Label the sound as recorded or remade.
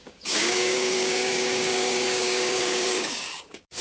remade